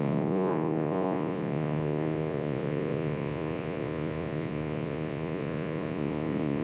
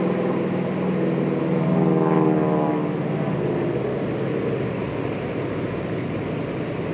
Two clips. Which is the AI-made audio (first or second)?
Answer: first